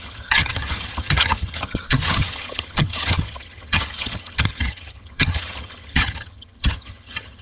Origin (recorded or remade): remade